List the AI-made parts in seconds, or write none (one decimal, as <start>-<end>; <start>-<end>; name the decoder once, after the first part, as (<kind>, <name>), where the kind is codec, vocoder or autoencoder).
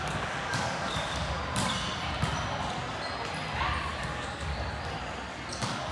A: 0.0-1.4 (codec, DAC); 4.0-4.5; 5.5-5.9